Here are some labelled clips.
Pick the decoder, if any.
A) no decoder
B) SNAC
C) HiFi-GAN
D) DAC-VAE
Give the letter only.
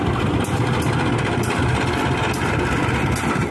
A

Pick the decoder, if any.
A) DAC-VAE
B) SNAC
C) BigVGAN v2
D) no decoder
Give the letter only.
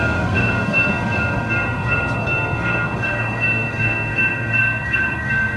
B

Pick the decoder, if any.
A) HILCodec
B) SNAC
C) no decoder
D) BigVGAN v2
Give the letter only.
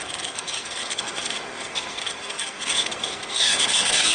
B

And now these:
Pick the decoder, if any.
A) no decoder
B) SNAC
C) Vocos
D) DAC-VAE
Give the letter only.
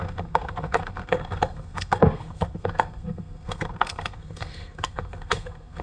B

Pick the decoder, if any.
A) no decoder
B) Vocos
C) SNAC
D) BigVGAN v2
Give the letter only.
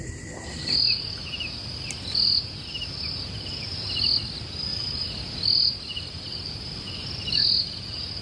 A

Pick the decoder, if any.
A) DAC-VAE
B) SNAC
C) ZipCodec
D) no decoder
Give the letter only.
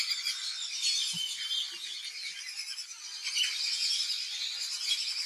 D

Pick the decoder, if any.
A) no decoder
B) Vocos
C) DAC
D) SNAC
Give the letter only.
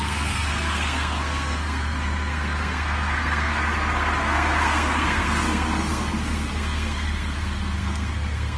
D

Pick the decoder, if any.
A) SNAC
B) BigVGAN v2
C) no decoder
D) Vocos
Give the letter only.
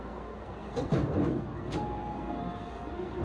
A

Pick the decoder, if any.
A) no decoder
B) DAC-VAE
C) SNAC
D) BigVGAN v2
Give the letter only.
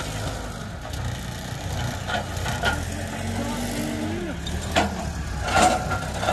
A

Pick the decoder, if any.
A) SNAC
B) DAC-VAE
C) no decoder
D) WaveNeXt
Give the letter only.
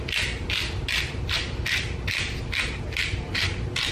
C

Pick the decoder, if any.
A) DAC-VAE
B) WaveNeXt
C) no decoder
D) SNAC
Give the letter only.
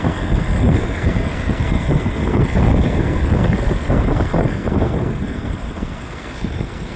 D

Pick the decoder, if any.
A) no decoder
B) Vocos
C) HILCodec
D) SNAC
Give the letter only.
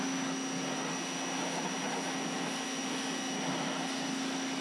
A